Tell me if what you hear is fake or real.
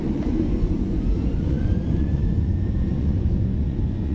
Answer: fake